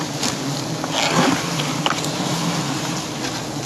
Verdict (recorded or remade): recorded